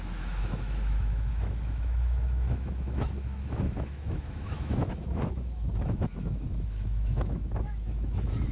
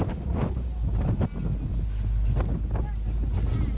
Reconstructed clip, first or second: first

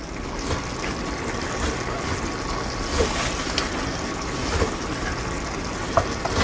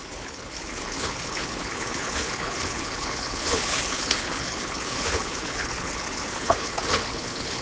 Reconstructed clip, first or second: second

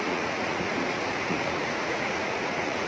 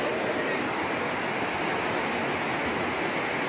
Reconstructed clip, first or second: first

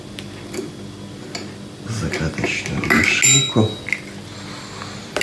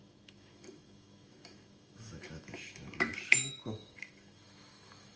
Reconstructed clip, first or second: second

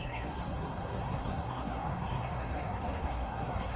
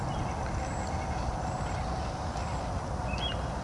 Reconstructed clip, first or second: first